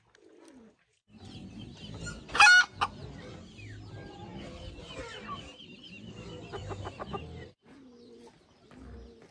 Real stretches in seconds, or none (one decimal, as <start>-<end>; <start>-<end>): 0.0-9.3